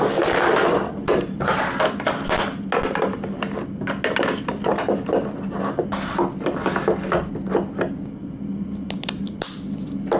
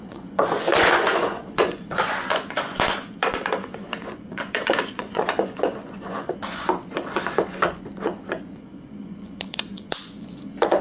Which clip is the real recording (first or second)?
first